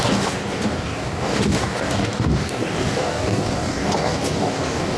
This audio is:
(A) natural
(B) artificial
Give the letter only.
B